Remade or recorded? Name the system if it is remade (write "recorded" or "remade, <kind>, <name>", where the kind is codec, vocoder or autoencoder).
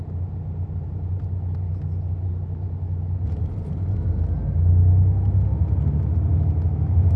recorded